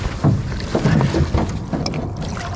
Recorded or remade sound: recorded